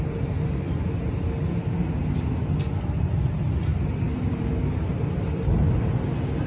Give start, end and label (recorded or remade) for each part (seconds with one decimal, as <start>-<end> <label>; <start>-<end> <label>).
0.0-6.5 recorded